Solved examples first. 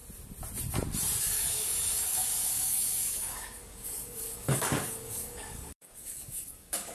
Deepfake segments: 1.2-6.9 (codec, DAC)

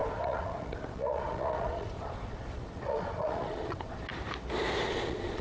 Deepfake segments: 0.0-4.1 (vocoder, Vocos); 4.9-5.4

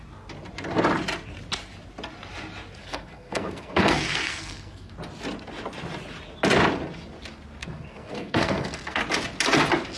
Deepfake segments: 2.8-4.9 (codec, SNAC); 7.6-9.0

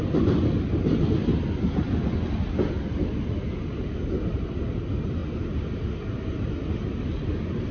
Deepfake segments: none